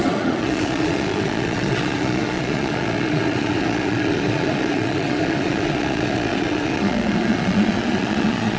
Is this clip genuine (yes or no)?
no